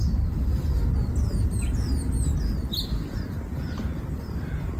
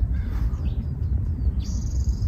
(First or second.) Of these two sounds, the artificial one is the second